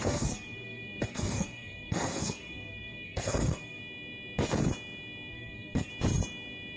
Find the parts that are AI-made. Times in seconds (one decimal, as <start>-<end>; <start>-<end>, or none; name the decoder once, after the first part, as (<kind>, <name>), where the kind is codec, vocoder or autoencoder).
0.0-3.8 (codec, SNAC); 5.3-5.9